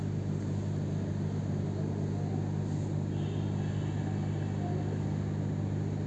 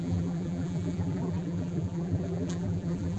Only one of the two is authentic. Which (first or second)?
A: first